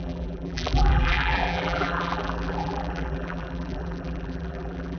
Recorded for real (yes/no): no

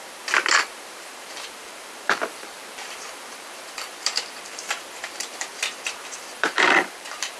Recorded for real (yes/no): no